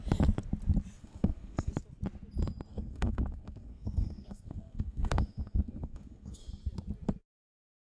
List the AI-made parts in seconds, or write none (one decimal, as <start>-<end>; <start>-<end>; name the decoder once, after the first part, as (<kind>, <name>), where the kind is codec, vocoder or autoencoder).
1.0-1.7 (codec, SNAC); 2.7-6.5